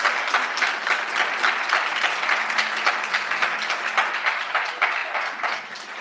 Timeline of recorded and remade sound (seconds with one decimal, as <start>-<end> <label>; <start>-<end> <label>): 0.0-6.0 recorded